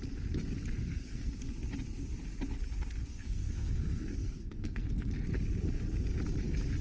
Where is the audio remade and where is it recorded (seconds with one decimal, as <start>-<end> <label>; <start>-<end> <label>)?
0.0-0.8 recorded; 0.8-1.4 remade; 1.4-3.1 recorded; 3.1-5.1 remade; 5.1-6.8 recorded